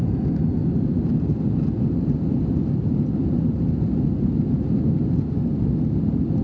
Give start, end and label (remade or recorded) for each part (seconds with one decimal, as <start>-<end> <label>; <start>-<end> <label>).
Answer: 0.0-6.4 recorded